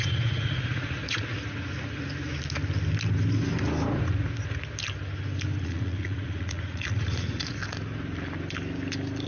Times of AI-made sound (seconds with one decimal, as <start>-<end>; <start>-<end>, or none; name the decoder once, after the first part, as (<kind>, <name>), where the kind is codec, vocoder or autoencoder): 0.0-1.3 (vocoder, Vocos); 5.6-7.6

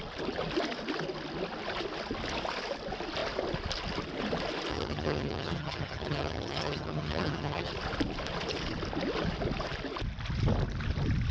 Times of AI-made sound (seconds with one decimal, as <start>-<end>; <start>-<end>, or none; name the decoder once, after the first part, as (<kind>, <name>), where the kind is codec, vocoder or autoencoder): 4.7-7.7 (vocoder, HiFi-GAN)

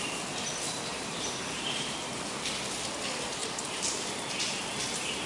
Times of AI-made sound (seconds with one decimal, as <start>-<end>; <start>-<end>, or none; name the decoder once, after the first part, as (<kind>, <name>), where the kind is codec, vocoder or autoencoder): 0.9-2.5 (vocoder, BigVGAN v2); 3.4-5.3

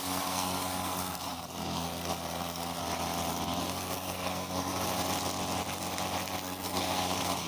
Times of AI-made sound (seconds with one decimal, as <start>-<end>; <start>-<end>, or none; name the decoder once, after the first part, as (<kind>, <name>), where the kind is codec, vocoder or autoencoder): 0.0-2.8 (codec, SNAC); 3.6-4.7; 6.4-7.5

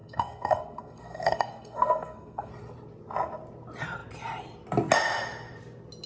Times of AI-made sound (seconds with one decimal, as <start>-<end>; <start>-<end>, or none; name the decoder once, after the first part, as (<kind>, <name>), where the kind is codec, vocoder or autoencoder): 0.0-2.5 (codec, SNAC)

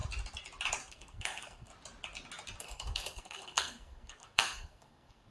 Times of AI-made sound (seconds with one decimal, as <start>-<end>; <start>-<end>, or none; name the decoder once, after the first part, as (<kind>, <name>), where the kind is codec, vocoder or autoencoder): 0.9-1.7 (codec, SNAC); 2.6-5.3

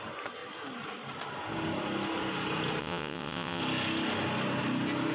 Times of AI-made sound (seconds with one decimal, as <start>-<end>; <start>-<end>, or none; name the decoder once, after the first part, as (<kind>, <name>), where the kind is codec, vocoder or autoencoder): 2.8-3.6 (vocoder, WaveNeXt)